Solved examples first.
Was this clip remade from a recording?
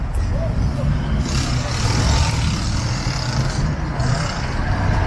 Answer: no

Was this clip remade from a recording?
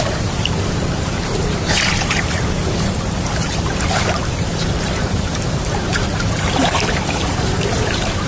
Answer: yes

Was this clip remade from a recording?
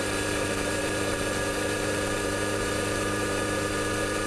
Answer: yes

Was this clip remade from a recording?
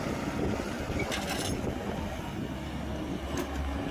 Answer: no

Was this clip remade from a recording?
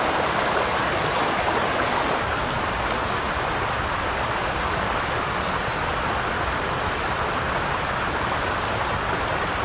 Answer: no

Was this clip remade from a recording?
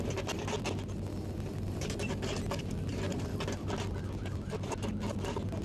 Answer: no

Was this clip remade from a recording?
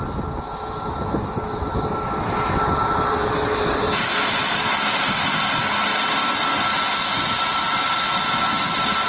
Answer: no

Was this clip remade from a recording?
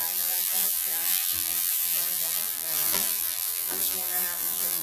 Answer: yes